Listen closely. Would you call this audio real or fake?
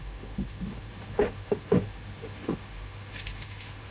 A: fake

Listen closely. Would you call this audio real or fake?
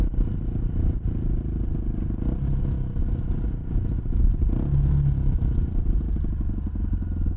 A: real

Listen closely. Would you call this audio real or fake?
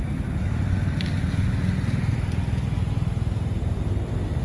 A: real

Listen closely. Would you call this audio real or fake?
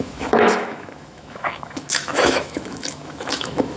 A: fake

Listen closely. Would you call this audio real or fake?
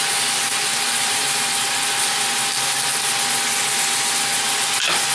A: real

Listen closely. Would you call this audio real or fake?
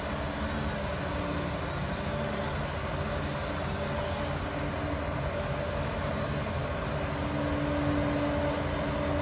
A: real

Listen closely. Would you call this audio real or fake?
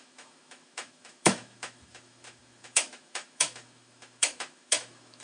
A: fake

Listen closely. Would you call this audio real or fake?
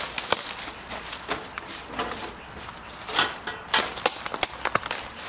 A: real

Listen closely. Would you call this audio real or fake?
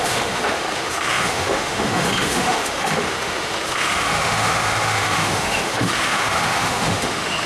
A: fake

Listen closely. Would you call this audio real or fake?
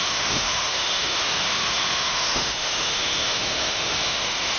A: fake